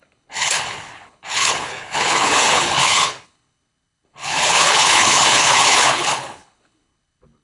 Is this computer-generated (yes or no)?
yes